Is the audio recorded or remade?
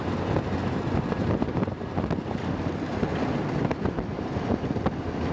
recorded